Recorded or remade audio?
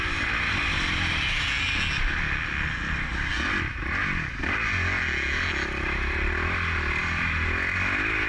recorded